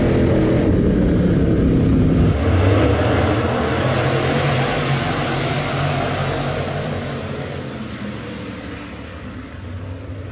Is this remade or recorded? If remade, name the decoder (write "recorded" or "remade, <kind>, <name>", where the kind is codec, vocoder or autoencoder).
recorded